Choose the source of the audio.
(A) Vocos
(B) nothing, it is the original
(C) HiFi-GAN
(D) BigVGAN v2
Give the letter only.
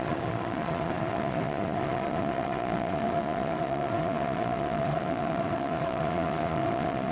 A